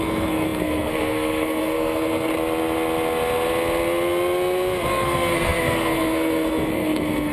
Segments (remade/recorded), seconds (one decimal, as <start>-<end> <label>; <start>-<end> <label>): 0.0-2.3 remade; 2.3-4.9 recorded; 4.9-7.3 remade